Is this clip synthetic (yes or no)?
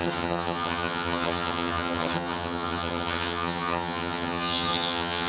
yes